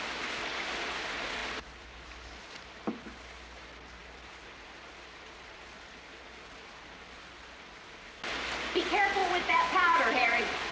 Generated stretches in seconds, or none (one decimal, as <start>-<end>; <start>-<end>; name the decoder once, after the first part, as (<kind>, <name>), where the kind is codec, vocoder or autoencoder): 9.2-10.7 (vocoder, Vocos)